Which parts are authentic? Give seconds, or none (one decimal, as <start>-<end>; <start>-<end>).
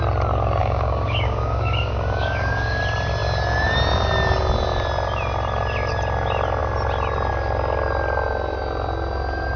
0.0-0.6; 2.8-9.6